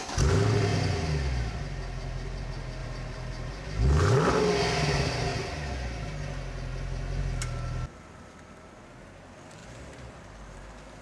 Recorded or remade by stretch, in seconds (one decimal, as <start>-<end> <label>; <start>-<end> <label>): 0.0-2.8 recorded; 2.8-3.8 remade; 3.8-9.6 recorded; 9.6-10.6 remade; 10.6-11.0 recorded